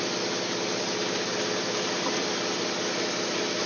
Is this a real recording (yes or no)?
yes